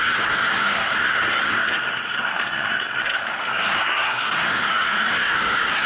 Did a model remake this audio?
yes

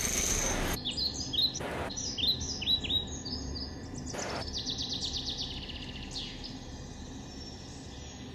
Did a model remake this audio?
no